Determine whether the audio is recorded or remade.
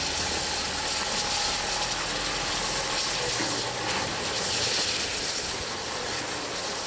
recorded